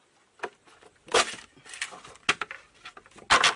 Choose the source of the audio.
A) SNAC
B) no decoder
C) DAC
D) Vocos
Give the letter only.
B